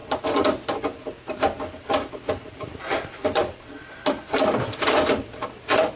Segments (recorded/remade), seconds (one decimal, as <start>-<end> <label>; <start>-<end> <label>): 0.0-6.0 recorded